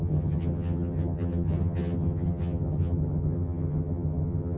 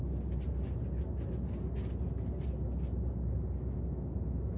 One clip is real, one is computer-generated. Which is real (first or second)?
second